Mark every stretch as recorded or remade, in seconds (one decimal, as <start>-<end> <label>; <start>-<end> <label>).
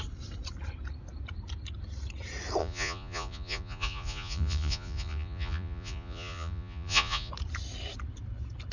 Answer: 0.0-2.6 recorded; 2.6-7.3 remade; 7.3-8.7 recorded